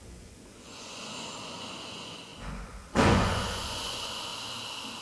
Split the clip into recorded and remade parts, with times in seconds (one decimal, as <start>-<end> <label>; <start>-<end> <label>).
0.0-4.3 remade; 4.3-5.0 recorded